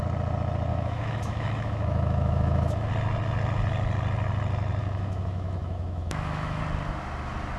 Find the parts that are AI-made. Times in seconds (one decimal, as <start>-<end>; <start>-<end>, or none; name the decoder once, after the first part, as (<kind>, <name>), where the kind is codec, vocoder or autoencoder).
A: 0.7-2.9 (autoencoder, DAC-VAE); 4.8-6.6